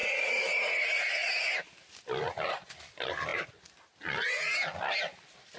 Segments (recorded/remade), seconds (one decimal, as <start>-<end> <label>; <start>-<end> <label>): 0.0-5.6 recorded